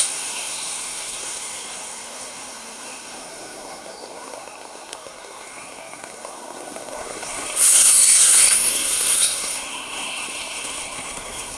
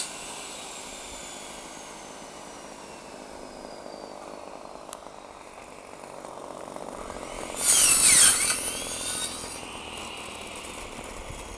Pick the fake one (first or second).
first